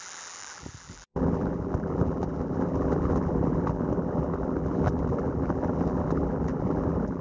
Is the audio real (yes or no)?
no